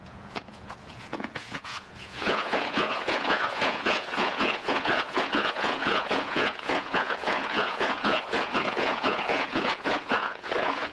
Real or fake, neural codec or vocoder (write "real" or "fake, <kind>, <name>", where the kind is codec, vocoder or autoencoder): fake, vocoder, Vocos